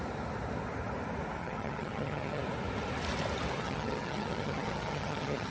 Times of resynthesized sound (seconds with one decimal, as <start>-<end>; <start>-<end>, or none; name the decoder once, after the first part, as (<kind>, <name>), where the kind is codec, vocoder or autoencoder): 1.4-2.4 (vocoder, HiFi-GAN); 3.6-5.5